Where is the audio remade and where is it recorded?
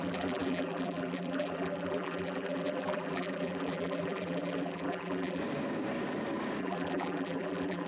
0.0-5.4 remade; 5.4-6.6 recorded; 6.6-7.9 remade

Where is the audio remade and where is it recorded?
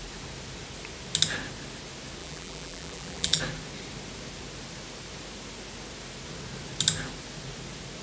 0.0-2.2 recorded; 2.2-3.4 remade; 3.4-8.0 recorded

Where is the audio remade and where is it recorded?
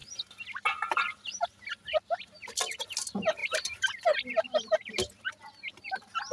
0.0-6.3 recorded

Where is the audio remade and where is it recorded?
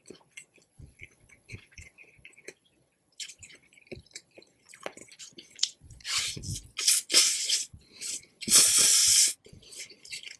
0.0-6.5 remade; 6.5-7.2 recorded; 7.2-8.9 remade; 8.9-9.5 recorded; 9.5-10.4 remade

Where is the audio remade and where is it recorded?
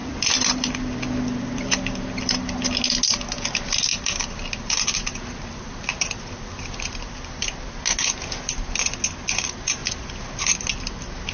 0.0-0.7 remade; 0.7-3.9 recorded; 3.9-7.8 remade; 7.8-9.8 recorded; 9.8-10.7 remade; 10.7-11.3 recorded